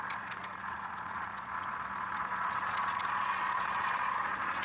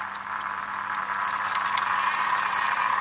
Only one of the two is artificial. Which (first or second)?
first